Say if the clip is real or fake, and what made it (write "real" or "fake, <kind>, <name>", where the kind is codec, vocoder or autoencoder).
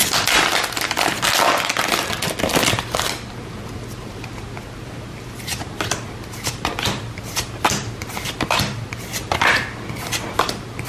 real